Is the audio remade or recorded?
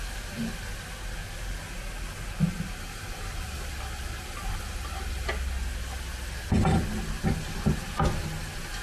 recorded